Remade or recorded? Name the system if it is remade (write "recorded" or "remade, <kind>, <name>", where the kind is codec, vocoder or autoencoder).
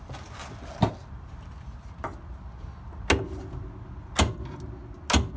recorded